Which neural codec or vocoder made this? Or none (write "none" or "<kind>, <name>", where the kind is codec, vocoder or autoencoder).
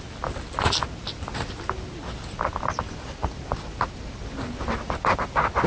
none